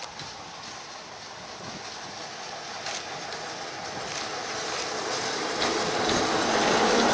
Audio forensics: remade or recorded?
recorded